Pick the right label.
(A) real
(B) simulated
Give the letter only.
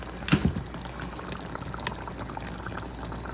A